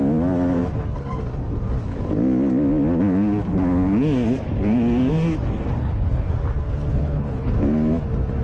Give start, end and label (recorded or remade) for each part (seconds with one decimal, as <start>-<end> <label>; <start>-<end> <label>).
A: 0.0-5.8 recorded; 5.8-6.3 remade; 6.3-6.9 recorded; 6.9-7.5 remade; 7.5-8.4 recorded